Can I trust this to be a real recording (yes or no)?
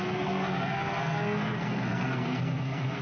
no